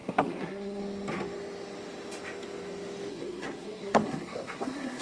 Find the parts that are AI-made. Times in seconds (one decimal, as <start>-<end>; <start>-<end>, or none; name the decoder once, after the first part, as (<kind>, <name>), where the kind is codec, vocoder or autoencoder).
0.0-0.8 (codec, SNAC); 3.1-5.0

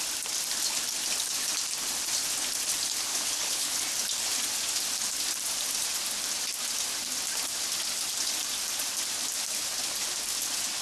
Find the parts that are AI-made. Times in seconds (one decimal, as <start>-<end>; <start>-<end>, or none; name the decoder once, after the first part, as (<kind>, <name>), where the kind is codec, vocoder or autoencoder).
3.1-3.8 (codec, HILCodec)

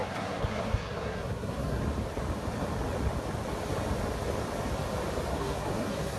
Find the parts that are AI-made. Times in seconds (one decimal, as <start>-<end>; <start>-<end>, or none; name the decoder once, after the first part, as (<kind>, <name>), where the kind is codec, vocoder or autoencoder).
0.0-1.8 (codec, SNAC); 5.3-6.2

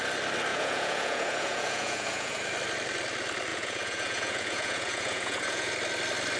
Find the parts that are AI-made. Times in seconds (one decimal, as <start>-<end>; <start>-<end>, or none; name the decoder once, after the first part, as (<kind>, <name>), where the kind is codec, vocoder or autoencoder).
0.5-2.4 (vocoder, Vocos); 3.5-5.7

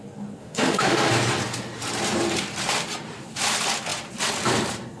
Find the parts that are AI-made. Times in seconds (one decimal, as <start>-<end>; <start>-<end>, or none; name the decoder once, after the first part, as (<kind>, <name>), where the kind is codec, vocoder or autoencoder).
0.4-1.1 (autoencoder, DAC-VAE)

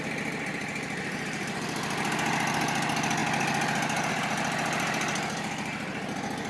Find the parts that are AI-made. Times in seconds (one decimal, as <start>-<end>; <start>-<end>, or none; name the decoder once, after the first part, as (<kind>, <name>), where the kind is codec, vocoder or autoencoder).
0.5-1.5 (vocoder, BigVGAN v2)

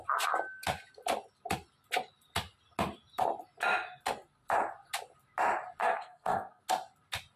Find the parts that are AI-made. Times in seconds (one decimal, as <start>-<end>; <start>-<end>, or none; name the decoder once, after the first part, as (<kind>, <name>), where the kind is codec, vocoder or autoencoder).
5.8-6.6 (codec, SNAC)